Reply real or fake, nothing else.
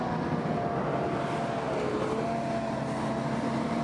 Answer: real